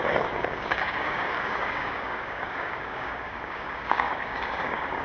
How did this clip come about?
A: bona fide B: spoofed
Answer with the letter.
B